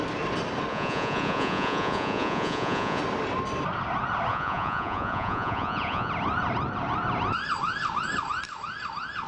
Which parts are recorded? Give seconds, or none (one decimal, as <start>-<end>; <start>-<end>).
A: 0.0-0.7; 3.0-4.3; 6.1-9.3